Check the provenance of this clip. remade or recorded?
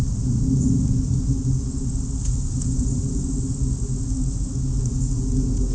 recorded